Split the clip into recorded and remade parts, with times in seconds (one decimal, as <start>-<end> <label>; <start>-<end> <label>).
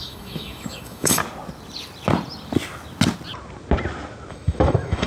0.0-1.2 remade; 1.2-4.3 recorded; 4.3-5.1 remade